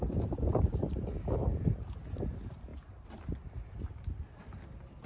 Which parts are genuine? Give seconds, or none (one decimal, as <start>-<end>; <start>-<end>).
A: 0.0-5.1